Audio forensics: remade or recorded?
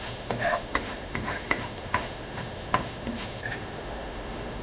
remade